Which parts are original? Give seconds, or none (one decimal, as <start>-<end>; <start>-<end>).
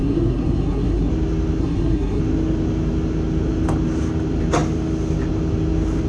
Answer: 1.1-1.6; 2.2-6.1